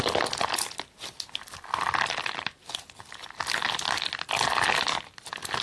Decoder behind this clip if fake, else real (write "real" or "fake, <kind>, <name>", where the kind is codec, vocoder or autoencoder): real